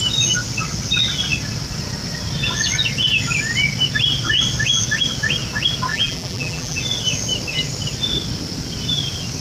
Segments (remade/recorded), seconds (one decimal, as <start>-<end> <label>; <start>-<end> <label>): 0.0-5.9 recorded; 5.9-6.8 remade; 6.8-9.4 recorded